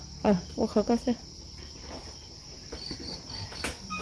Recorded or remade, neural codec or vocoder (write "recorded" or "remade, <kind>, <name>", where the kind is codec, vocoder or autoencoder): remade, vocoder, BigVGAN v2